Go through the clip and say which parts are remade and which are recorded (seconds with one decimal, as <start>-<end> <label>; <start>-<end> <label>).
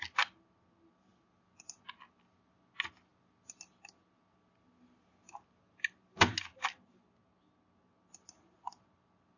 0.0-9.4 recorded